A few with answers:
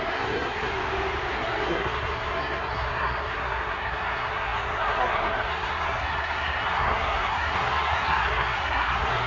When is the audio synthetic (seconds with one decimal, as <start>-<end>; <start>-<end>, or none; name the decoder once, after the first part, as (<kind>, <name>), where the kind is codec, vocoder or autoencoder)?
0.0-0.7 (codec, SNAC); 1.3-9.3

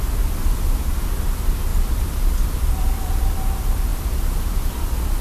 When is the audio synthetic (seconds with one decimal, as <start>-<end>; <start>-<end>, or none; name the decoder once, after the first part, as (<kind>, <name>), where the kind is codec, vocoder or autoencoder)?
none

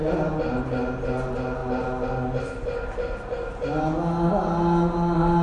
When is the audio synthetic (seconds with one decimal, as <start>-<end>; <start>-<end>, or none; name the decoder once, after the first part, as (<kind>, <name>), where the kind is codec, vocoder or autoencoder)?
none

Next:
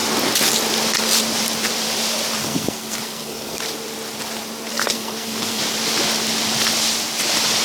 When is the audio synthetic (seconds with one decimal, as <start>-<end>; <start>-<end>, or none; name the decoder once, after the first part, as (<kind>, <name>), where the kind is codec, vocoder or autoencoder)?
2.4-3.6 (codec, SNAC); 4.7-5.6

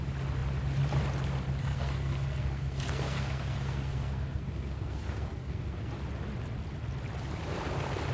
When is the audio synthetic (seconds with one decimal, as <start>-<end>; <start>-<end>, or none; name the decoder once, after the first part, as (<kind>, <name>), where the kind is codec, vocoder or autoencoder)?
1.6-5.9 (codec, SNAC)

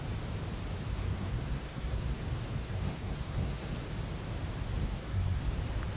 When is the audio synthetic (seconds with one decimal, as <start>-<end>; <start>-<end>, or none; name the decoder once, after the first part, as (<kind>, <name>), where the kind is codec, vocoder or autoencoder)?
0.9-2.2 (codec, SNAC); 2.6-3.7; 4.8-5.4